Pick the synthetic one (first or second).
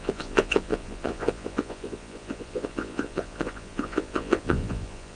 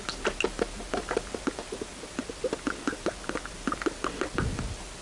first